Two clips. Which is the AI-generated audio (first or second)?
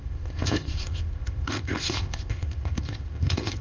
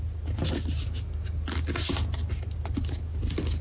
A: first